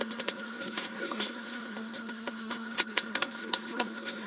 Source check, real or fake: fake